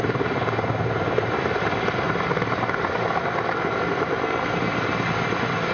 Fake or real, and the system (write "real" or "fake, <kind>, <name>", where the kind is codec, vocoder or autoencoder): real